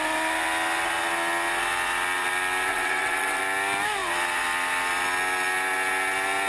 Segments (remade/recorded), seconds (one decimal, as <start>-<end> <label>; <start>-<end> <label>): 0.0-2.7 recorded; 2.7-3.4 remade; 3.4-6.5 recorded